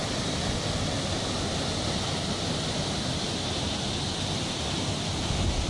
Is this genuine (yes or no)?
yes